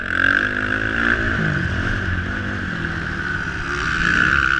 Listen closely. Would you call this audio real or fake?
real